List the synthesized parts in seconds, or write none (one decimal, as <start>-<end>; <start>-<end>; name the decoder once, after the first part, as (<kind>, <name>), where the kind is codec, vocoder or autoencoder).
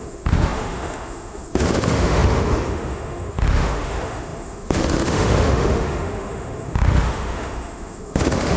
0.0-8.6 (autoencoder, DAC-VAE)